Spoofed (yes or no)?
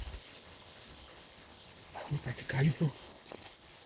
yes